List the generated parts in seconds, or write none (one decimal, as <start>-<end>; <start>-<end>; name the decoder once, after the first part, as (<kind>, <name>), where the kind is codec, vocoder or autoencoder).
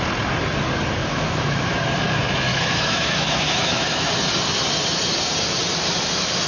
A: 1.0-1.7 (autoencoder, DAC-VAE); 2.5-4.1